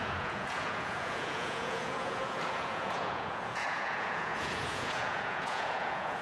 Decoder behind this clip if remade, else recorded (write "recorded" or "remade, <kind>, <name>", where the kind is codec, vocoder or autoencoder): remade, vocoder, Vocos